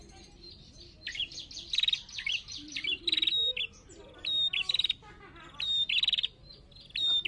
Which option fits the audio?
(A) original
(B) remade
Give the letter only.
A